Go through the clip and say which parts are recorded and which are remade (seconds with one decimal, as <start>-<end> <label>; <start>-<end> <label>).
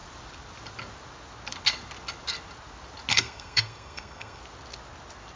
0.0-3.1 recorded; 3.1-4.4 remade; 4.4-5.4 recorded